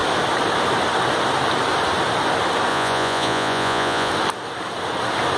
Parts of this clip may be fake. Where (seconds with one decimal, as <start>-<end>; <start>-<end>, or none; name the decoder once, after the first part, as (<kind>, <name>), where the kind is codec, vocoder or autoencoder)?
2.7-4.1 (vocoder, Vocos)